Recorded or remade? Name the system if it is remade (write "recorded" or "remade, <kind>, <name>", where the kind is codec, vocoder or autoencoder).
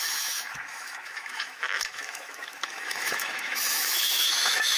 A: remade, autoencoder, DAC-VAE